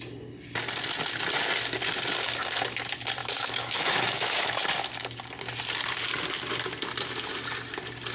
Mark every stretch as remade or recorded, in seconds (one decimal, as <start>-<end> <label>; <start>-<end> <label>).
0.0-3.2 recorded; 3.2-4.5 remade; 4.5-8.1 recorded